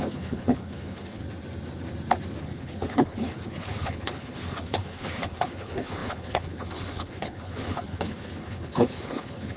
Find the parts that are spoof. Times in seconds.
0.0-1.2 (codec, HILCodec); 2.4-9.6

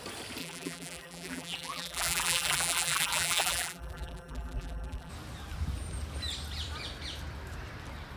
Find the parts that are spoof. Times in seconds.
0.4-5.1 (vocoder, BigVGAN v2)

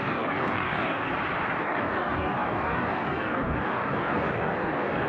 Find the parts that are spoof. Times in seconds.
0.0-1.1 (codec, DAC); 1.6-5.1

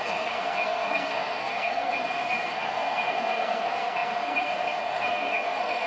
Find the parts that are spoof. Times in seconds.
0.0-5.9 (codec, SNAC)

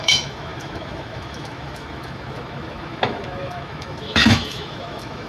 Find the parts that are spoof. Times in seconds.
0.0-5.3 (autoencoder, DAC-VAE)

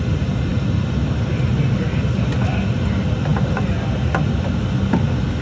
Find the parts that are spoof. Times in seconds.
3.3-4.6 (vocoder, BigVGAN v2)

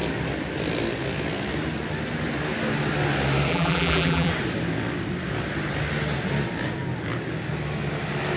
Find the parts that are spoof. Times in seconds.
3.5-4.3 (vocoder, BigVGAN v2)